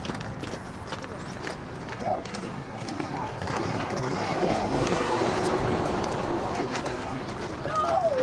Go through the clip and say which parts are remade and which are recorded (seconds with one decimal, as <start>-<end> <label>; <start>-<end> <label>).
0.0-1.9 recorded; 1.9-5.2 remade; 5.2-6.6 recorded; 6.6-7.2 remade; 7.2-8.2 recorded